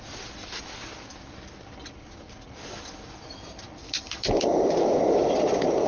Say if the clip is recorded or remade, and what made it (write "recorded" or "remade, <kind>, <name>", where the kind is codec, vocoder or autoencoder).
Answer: recorded